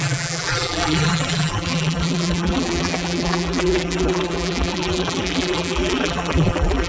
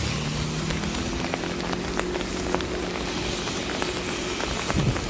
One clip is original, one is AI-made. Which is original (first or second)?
second